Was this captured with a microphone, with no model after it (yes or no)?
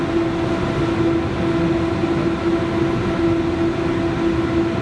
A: yes